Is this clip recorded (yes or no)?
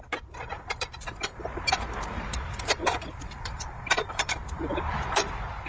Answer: no